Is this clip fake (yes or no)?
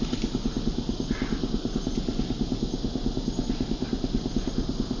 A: no